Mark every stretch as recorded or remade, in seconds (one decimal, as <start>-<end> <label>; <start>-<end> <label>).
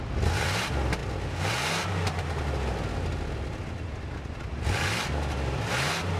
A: 0.0-6.2 recorded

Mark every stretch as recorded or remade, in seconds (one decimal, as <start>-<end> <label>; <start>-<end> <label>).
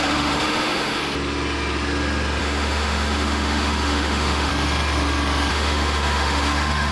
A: 0.0-1.0 remade; 1.0-2.4 recorded; 2.4-4.5 remade; 4.5-5.5 recorded; 5.5-6.9 remade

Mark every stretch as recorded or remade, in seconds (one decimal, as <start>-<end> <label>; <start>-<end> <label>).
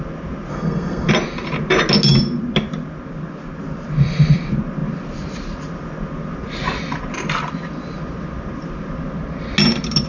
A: 0.0-0.5 recorded; 0.5-1.1 remade; 1.1-10.1 recorded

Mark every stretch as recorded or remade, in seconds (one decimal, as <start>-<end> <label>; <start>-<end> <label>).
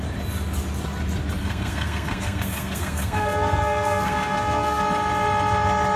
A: 0.0-1.4 recorded; 1.4-4.8 remade; 4.8-6.0 recorded